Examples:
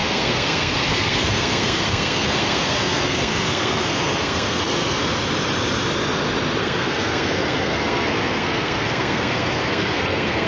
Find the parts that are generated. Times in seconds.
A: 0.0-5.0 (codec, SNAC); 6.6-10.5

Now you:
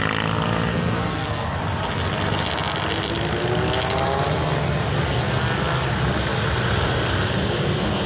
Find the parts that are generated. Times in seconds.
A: 0.7-1.6 (codec, SNAC)

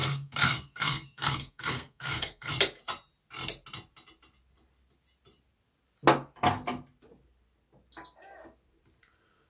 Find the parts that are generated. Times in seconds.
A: 0.0-2.5 (codec, SNAC)

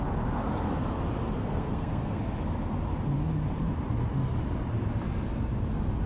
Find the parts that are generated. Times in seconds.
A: 1.4-2.2 (codec, SNAC)

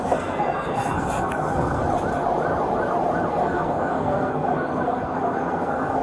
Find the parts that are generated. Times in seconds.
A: 0.0-1.8 (codec, SNAC); 3.3-6.0

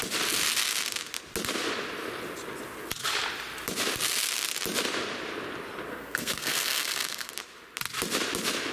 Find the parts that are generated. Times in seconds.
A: 5.9-7.3 (codec, SNAC)

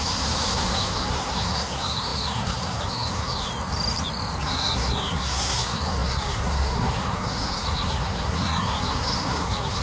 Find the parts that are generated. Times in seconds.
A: 0.0-3.5 (codec, SNAC); 4.4-9.8

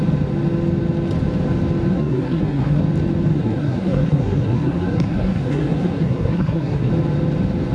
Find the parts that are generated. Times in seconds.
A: 1.9-2.8 (codec, SNAC); 3.3-6.9